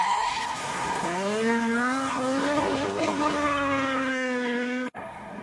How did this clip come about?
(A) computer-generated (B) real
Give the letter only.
A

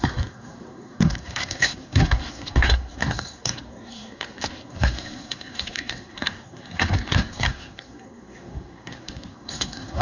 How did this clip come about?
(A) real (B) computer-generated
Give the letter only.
B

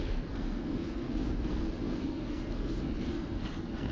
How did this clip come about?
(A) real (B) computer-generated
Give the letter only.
B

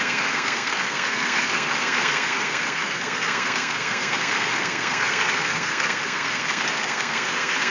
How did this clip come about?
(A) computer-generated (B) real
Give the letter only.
A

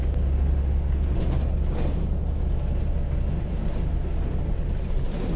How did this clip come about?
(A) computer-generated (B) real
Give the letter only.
B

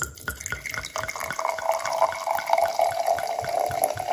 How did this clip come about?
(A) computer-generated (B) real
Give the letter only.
B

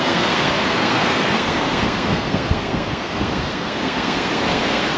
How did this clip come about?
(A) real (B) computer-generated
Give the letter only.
B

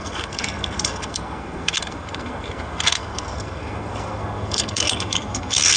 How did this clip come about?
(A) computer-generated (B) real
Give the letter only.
A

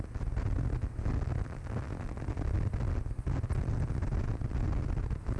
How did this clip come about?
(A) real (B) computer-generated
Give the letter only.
A